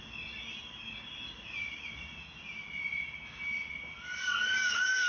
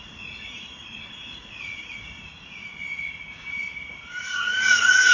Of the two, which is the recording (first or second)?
first